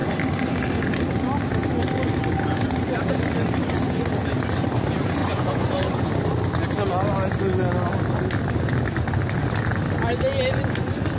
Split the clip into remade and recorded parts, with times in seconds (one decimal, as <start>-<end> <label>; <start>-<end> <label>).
0.0-5.2 recorded; 5.2-6.1 remade; 6.1-11.2 recorded